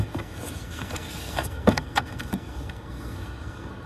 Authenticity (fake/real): fake